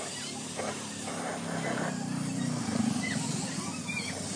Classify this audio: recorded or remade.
recorded